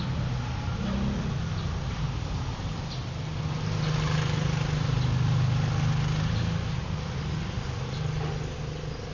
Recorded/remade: recorded